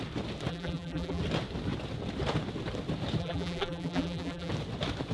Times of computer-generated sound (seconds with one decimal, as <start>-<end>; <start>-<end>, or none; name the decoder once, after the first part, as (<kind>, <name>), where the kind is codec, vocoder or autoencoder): 0.5-1.2 (vocoder, BigVGAN v2); 3.2-4.5